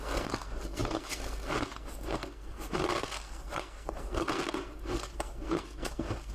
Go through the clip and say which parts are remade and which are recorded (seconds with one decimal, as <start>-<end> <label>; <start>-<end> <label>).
0.0-6.3 remade